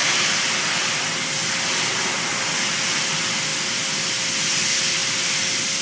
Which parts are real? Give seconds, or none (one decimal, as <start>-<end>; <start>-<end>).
0.0-5.8